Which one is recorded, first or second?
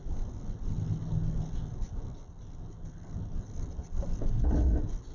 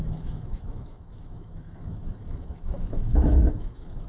first